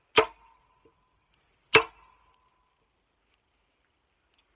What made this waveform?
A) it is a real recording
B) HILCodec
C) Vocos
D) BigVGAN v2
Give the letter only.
A